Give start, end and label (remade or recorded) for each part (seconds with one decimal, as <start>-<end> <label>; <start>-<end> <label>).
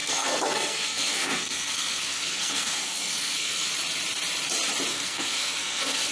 0.0-3.7 remade; 3.7-4.9 recorded; 4.9-6.1 remade